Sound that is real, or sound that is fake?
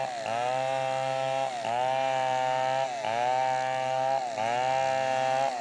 real